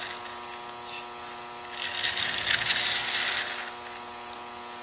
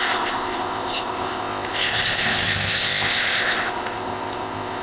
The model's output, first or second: second